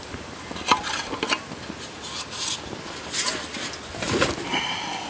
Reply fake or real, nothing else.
real